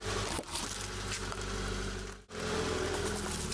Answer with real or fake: real